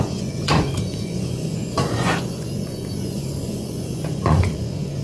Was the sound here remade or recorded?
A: remade